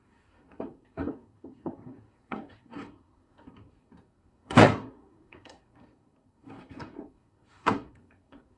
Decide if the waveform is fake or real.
fake